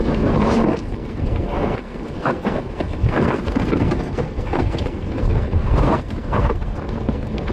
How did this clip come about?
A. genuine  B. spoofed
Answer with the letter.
B